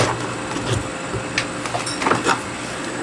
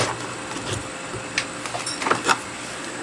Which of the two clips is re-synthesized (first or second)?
second